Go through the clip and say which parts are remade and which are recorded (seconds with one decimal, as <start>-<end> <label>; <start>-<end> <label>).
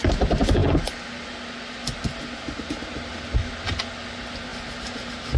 0.0-5.4 recorded